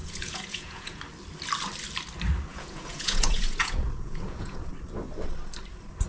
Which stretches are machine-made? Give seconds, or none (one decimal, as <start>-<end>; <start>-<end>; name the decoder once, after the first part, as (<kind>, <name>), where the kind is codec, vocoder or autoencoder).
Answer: 0.0-1.0 (vocoder, Vocos); 2.5-4.7